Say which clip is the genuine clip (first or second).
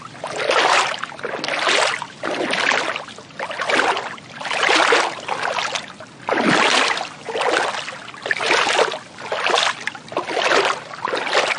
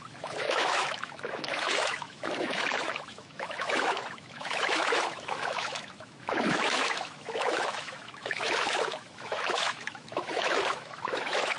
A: first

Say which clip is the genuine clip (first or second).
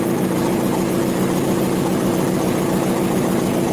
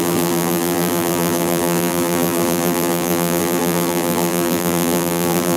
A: first